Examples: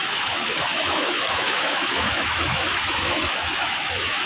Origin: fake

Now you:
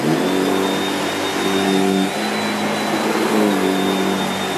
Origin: real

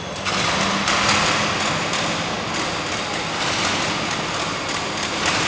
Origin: real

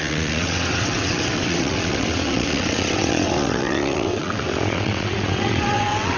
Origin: fake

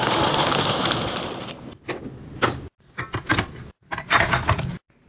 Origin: real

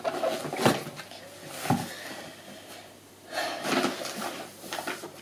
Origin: real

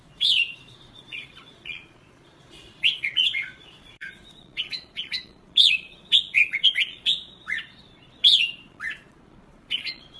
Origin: fake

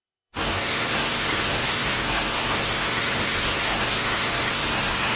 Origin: fake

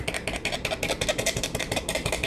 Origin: real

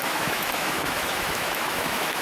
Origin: fake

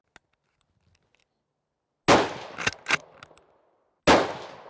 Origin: real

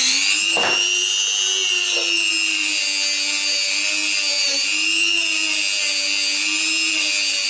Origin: real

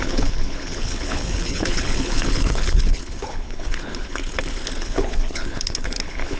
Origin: fake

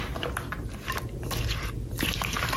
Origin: real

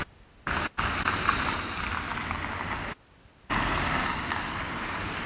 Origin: real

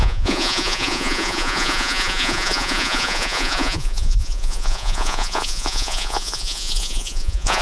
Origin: fake